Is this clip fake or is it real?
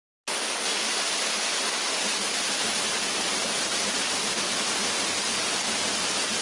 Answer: real